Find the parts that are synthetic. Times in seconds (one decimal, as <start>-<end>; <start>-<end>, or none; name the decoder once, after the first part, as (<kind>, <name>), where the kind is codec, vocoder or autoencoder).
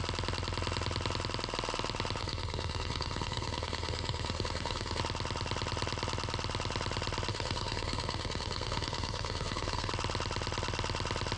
2.2-5.0 (codec, SNAC); 7.3-9.9